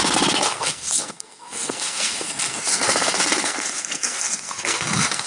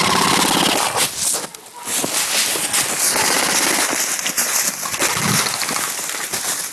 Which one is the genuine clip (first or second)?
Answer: second